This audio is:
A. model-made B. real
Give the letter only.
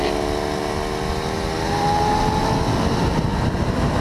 B